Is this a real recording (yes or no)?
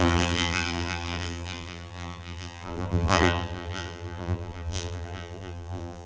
no